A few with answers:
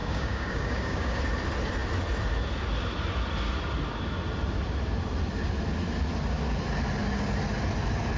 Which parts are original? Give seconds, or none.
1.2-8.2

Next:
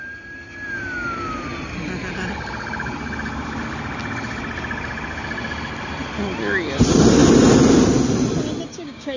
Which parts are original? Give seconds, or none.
0.0-8.7

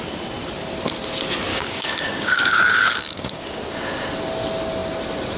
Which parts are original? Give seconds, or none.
0.0-1.5; 3.6-5.4